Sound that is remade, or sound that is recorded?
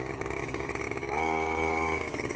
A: remade